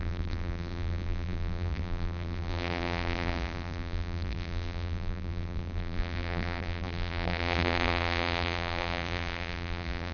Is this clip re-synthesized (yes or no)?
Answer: yes